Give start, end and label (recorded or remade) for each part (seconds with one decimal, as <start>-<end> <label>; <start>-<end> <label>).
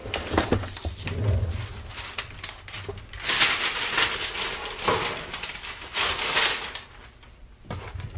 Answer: 0.0-8.2 recorded